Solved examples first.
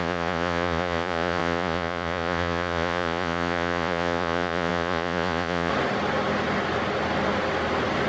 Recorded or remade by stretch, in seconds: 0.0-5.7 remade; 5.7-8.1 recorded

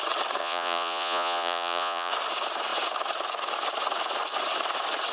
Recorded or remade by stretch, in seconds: 0.0-0.4 recorded; 0.4-2.1 remade; 2.1-5.1 recorded

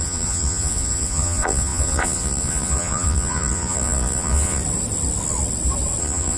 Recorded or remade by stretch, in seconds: 0.0-4.6 remade; 4.6-6.0 recorded; 6.0-6.4 remade

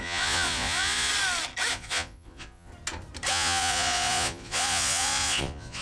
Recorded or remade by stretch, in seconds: 0.0-1.1 remade; 1.1-1.7 recorded; 1.7-2.7 remade; 2.7-3.3 recorded; 3.3-5.8 remade

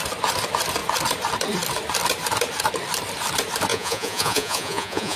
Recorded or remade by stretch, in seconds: 0.0-3.7 recorded; 3.7-5.2 remade

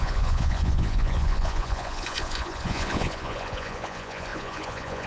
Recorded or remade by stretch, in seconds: 0.0-5.1 remade